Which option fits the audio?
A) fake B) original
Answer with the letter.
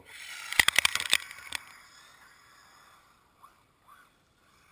A